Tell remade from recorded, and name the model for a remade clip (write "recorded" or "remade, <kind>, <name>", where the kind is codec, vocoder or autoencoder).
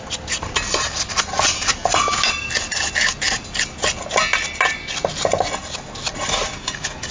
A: recorded